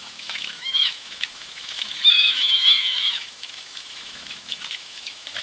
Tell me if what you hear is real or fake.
fake